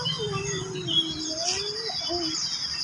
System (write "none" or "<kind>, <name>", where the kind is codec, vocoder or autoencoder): none